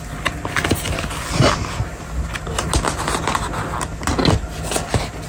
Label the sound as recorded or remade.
recorded